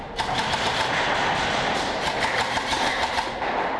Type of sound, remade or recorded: recorded